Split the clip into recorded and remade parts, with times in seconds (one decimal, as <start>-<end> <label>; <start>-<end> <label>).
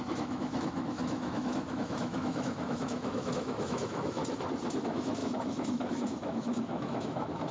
0.0-4.2 remade; 4.2-4.8 recorded; 4.8-7.5 remade